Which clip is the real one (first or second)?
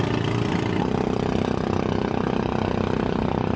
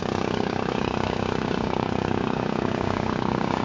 first